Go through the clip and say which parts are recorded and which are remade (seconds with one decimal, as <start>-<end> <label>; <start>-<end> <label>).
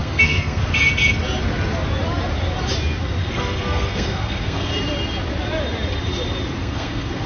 0.0-0.6 remade; 0.6-3.2 recorded; 3.2-4.7 remade; 4.7-6.6 recorded; 6.6-7.3 remade